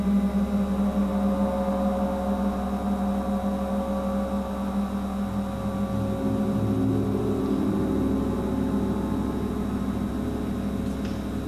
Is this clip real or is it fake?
real